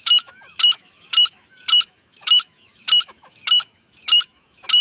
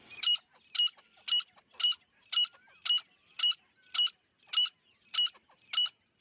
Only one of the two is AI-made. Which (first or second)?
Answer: first